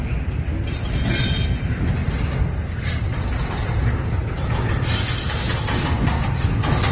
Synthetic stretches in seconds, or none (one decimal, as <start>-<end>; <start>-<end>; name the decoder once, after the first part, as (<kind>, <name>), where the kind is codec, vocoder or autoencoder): none